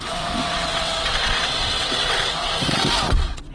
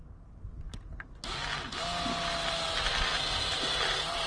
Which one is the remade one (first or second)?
first